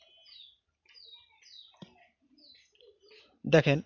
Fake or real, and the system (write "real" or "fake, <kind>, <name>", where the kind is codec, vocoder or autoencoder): fake, vocoder, BigVGAN v2